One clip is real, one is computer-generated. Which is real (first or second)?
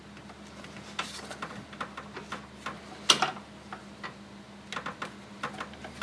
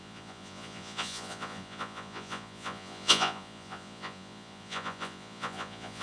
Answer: first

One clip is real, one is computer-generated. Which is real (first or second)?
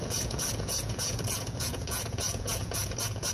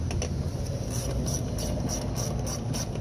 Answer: second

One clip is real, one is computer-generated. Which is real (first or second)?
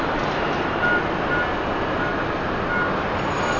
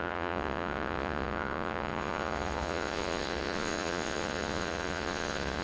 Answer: first